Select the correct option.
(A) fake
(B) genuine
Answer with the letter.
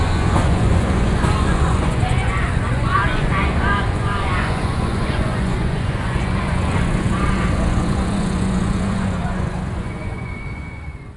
A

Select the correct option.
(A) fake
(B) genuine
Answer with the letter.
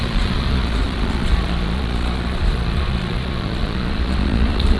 A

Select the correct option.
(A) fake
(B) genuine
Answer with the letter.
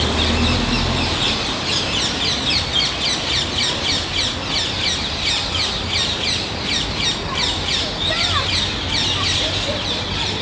B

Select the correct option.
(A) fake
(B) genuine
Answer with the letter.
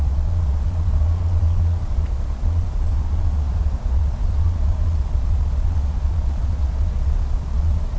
A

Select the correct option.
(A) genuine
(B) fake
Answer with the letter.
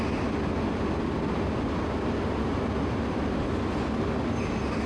A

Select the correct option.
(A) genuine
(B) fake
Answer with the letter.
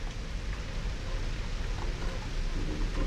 A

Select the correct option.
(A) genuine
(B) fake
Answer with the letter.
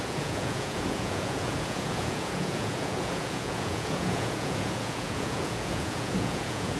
B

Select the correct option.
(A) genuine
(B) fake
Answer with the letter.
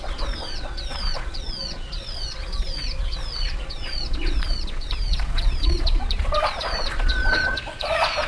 B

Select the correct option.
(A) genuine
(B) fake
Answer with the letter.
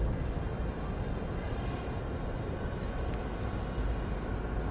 A